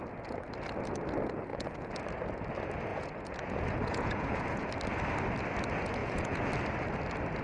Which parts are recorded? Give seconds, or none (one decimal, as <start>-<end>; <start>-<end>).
0.0-1.5; 2.0-2.9; 4.7-6.0; 6.5-7.4